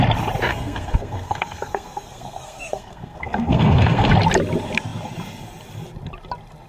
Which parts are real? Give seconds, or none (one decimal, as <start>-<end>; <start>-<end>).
0.0-0.5; 4.1-6.7